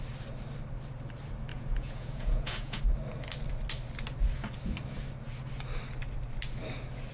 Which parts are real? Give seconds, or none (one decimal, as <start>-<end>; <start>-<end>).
0.0-1.5; 2.8-7.1